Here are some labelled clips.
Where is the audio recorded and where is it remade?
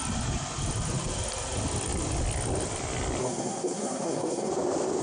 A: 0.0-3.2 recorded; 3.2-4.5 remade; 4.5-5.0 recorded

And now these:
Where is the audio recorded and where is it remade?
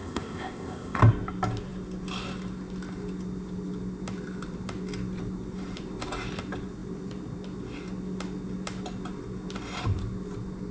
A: 0.0-1.0 remade; 1.0-10.7 recorded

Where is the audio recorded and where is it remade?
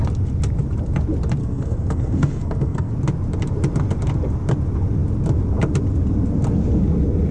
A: 0.0-1.4 recorded; 1.4-2.9 remade; 2.9-7.3 recorded